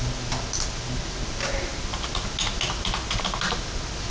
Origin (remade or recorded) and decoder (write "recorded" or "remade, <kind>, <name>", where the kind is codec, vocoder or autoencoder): recorded